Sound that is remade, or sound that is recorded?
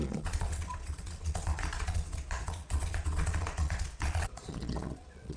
remade